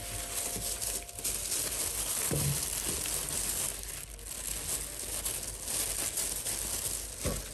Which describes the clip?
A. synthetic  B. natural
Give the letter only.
B